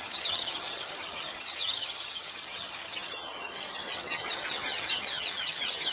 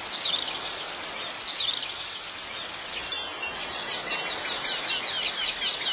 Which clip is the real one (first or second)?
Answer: second